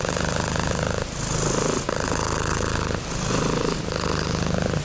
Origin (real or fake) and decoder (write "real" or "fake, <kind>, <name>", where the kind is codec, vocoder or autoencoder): real